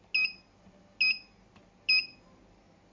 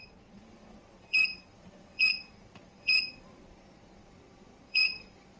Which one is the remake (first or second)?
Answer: second